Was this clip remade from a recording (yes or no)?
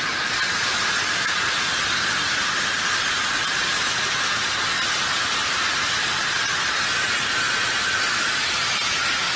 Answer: no